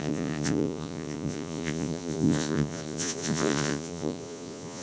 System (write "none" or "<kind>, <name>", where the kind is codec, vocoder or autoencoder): vocoder, Vocos